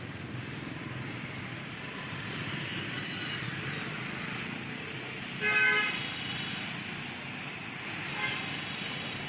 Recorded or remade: recorded